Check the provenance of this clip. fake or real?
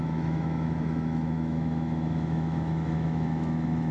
fake